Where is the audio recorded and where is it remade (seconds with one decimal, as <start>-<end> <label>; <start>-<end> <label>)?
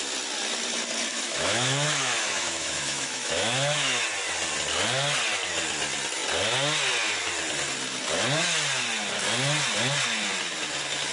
0.0-1.1 recorded; 1.1-4.0 remade; 4.0-11.1 recorded